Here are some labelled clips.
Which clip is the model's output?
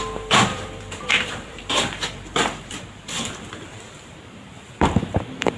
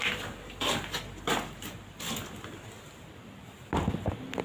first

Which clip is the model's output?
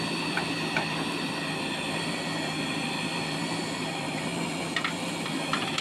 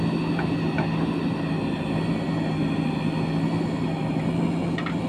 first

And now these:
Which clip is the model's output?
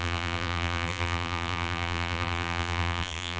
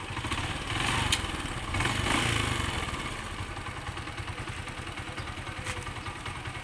first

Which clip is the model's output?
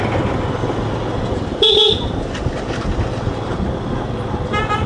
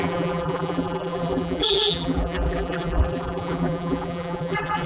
second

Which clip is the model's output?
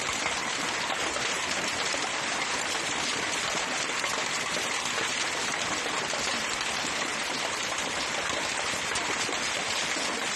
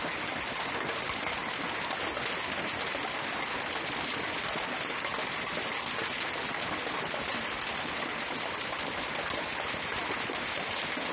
first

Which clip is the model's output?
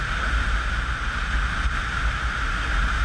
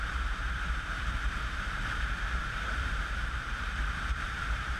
second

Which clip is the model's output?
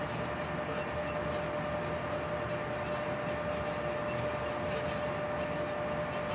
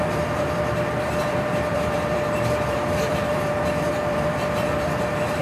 second